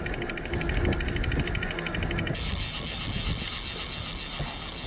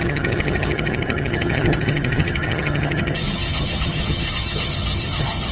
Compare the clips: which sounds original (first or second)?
first